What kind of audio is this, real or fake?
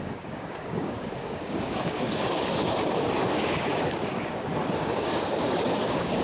fake